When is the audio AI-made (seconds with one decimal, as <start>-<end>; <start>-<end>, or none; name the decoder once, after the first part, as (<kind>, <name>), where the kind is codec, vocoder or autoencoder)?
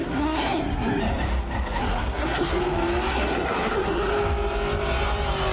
0.0-1.0 (codec, SNAC); 1.8-2.6; 3.1-4.1